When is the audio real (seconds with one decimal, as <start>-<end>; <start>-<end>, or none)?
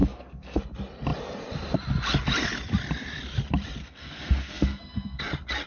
0.6-3.8; 5.2-5.7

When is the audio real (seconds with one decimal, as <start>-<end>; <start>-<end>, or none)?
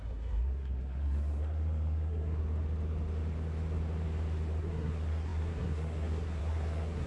2.4-4.6